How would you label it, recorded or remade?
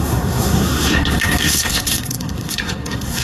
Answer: remade